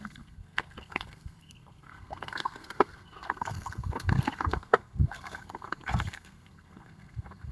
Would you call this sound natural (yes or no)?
no